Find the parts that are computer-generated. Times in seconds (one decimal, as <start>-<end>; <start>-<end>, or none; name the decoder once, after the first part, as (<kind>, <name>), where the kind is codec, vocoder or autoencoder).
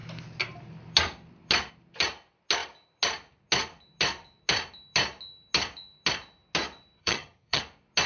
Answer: 7.0-7.6 (vocoder, HiFi-GAN)